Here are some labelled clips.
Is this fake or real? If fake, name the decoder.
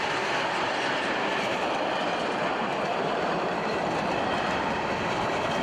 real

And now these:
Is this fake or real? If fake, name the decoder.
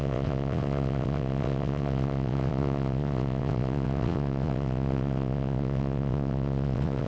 fake, vocoder, WaveNeXt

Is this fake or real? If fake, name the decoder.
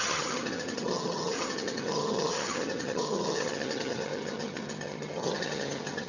fake, vocoder, HiFi-GAN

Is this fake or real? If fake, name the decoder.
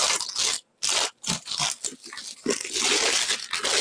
real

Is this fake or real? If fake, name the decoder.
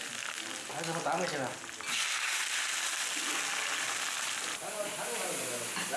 real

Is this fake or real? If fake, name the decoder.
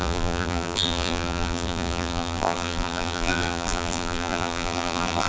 fake, vocoder, BigVGAN v2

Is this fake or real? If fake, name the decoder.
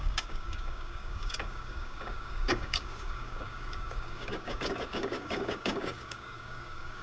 fake, codec, DAC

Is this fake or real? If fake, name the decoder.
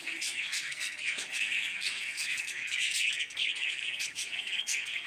fake, codec, SNAC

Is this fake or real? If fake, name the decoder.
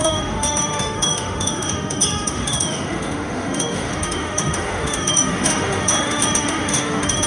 fake, autoencoder, DAC-VAE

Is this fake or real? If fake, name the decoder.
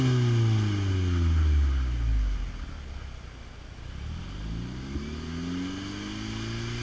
real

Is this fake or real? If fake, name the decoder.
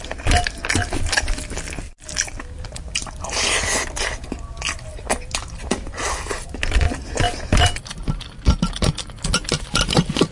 real